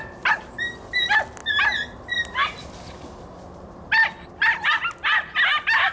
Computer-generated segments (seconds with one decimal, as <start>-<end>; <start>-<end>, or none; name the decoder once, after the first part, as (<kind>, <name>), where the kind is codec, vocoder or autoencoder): none